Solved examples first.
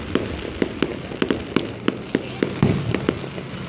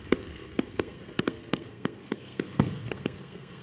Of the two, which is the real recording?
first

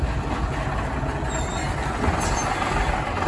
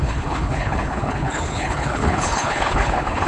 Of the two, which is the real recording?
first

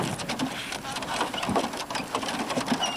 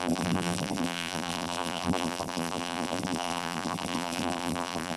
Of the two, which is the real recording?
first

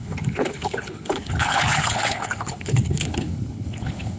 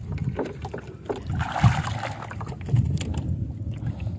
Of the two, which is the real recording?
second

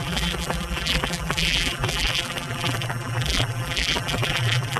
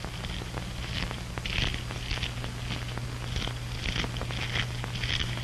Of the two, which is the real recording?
second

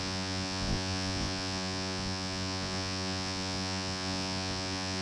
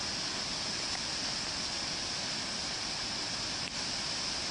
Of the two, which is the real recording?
second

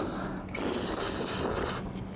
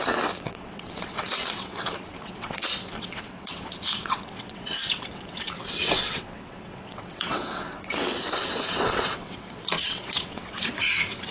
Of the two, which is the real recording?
first